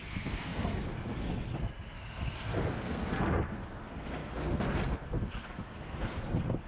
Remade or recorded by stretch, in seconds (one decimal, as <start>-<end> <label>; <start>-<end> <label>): 0.0-6.7 remade